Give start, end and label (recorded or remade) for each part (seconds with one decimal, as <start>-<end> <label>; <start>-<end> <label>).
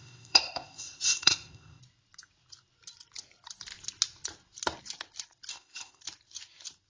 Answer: 0.0-1.8 remade; 1.8-5.5 recorded; 5.5-6.0 remade; 6.0-6.9 recorded